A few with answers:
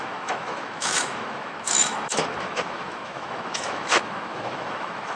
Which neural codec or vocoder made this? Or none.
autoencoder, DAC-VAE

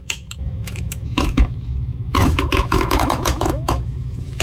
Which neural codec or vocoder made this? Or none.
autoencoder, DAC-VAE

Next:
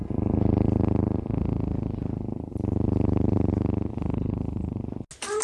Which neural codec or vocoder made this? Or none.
none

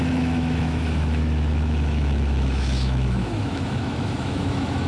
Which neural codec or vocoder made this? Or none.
autoencoder, DAC-VAE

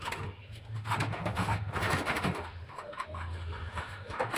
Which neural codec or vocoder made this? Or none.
autoencoder, DAC-VAE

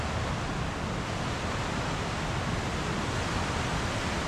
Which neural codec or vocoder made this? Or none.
none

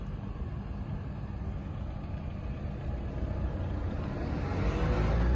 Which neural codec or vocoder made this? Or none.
none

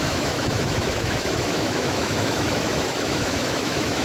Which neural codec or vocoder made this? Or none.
autoencoder, DAC-VAE